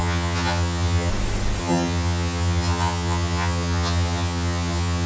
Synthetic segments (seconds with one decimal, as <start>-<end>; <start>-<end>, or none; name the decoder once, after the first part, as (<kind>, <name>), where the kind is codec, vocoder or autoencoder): 0.0-1.1 (vocoder, HiFi-GAN); 1.6-5.1